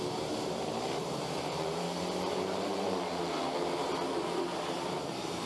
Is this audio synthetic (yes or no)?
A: yes